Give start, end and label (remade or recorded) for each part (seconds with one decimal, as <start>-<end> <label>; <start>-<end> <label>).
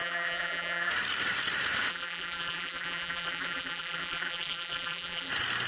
0.0-0.9 remade; 0.9-1.9 recorded; 1.9-5.3 remade; 5.3-5.7 recorded